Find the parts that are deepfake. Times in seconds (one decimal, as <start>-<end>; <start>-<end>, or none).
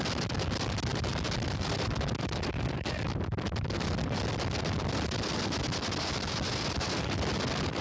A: none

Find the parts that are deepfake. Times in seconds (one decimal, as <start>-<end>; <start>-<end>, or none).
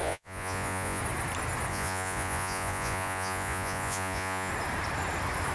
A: 0.0-1.0; 1.7-4.5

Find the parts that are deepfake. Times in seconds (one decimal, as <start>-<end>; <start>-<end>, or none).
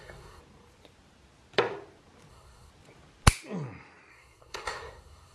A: 0.0-0.4; 2.3-2.7; 4.1-5.3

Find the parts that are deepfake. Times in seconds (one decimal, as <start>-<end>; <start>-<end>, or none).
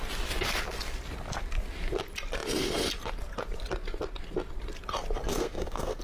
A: 5.3-6.0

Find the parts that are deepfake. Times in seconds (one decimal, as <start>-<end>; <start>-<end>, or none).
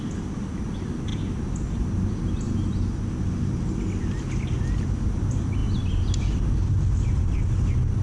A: none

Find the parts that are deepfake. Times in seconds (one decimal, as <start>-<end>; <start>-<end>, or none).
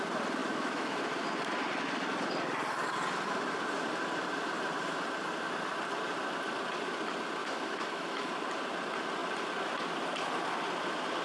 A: 0.4-1.0; 7.4-8.3